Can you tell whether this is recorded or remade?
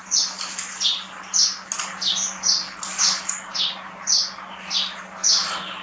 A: recorded